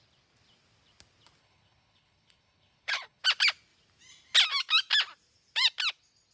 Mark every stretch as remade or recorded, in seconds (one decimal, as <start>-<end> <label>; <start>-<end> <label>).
0.0-1.4 recorded; 1.4-3.2 remade; 3.2-6.3 recorded